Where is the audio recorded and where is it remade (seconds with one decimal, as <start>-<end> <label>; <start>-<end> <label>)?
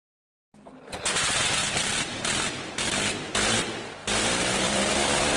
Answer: 0.0-1.6 recorded; 1.6-3.2 remade; 3.2-4.0 recorded; 4.0-4.9 remade; 4.9-5.4 recorded